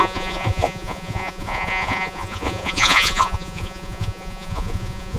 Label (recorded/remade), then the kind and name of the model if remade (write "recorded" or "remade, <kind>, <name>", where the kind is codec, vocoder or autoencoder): remade, vocoder, Vocos